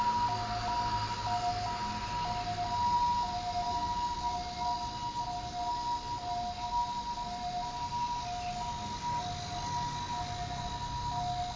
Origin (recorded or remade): recorded